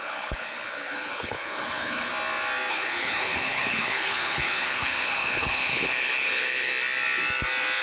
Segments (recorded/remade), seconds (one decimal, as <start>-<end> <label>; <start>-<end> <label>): 0.0-2.1 remade; 2.1-2.7 recorded; 2.7-6.7 remade; 6.7-7.8 recorded

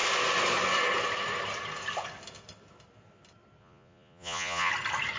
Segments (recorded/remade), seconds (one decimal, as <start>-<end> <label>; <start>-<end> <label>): 0.0-3.6 recorded; 3.6-4.7 remade; 4.7-5.2 recorded